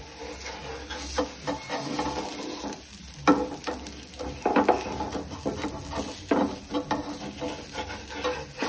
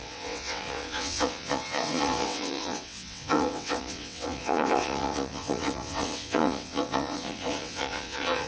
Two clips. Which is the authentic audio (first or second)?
first